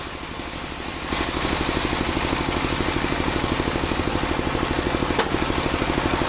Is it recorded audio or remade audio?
recorded